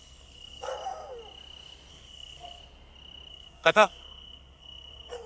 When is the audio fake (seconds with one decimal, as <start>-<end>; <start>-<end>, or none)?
0.0-0.7; 1.9-2.6; 3.3-5.3